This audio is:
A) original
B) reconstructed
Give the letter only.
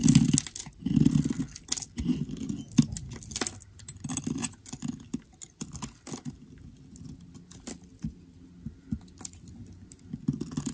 A